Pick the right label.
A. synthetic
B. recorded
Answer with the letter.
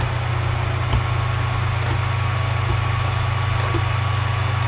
B